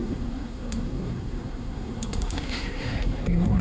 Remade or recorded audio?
remade